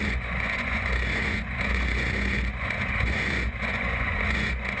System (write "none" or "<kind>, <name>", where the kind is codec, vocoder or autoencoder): vocoder, Vocos